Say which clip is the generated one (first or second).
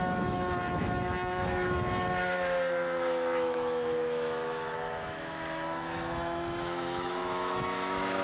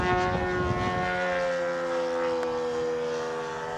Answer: first